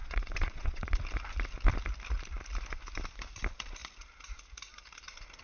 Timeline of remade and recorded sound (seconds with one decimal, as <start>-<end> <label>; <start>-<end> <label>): 0.0-1.0 remade; 1.0-5.4 recorded